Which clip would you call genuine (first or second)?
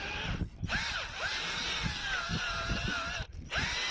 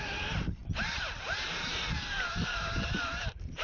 first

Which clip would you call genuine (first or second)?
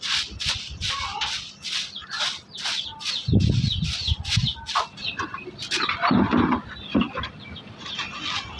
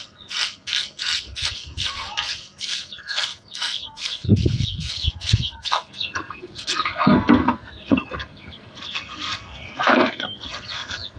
first